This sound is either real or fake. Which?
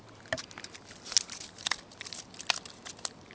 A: real